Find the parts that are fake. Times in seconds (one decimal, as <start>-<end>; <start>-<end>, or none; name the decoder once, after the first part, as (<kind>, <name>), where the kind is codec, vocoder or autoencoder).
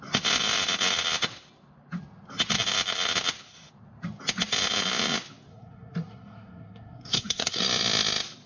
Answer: 5.5-7.6 (codec, SNAC)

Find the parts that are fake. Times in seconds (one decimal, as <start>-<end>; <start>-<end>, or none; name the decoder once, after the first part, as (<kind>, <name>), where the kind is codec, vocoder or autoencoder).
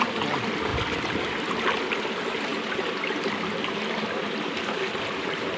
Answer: none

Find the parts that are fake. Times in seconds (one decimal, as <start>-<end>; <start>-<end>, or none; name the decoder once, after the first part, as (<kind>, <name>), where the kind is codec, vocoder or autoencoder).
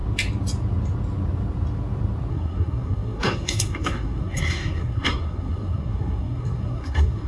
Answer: 2.3-7.3 (codec, SNAC)